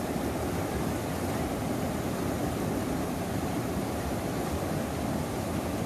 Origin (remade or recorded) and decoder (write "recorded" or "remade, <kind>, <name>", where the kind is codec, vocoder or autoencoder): recorded